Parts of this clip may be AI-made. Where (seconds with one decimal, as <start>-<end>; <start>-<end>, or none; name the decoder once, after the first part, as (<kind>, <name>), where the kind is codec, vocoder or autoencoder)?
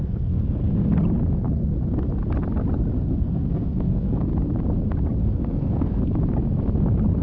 0.0-0.6 (codec, SNAC); 3.0-4.3; 5.2-6.0